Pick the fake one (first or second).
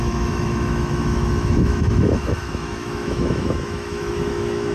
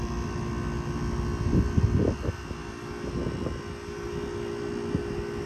first